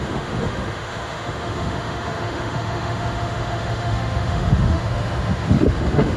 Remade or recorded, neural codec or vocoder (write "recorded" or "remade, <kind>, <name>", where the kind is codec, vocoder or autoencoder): remade, autoencoder, DAC-VAE